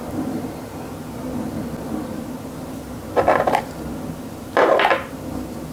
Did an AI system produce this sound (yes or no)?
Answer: no